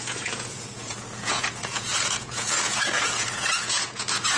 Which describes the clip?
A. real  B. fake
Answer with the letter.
B